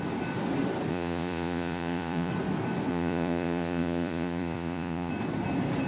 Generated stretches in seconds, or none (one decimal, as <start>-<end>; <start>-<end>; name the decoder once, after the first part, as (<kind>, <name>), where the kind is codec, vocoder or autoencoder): 0.9-2.3 (vocoder, Vocos); 2.9-5.1